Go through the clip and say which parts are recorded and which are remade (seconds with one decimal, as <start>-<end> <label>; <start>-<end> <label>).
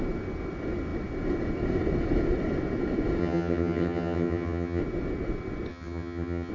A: 0.0-3.2 recorded; 3.2-4.8 remade; 4.8-5.7 recorded; 5.7-6.5 remade